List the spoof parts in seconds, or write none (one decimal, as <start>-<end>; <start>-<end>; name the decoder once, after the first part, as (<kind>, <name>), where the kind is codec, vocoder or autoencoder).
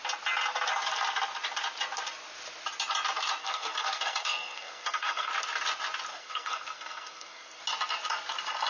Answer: 3.4-5.3 (codec, SNAC); 6.1-7.6